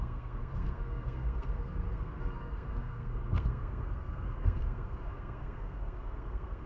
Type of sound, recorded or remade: remade